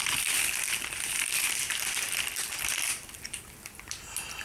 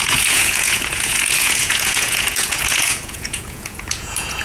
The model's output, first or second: second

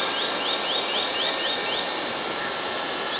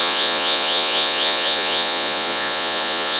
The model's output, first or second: second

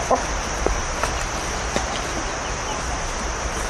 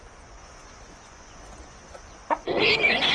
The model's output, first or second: second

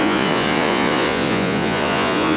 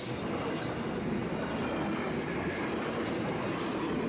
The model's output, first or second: first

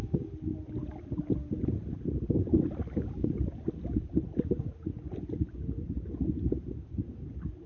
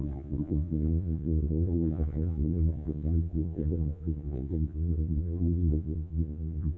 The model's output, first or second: second